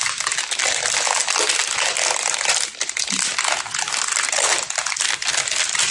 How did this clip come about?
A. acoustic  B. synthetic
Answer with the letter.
A